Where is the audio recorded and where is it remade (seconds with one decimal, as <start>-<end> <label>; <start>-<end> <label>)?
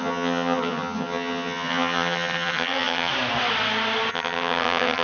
0.0-3.1 remade; 3.1-4.1 recorded; 4.1-5.0 remade